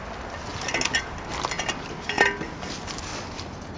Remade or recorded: recorded